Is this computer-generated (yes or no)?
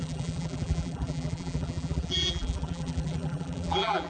yes